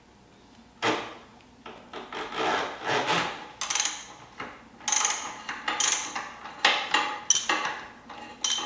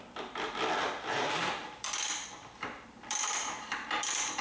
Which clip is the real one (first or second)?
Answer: first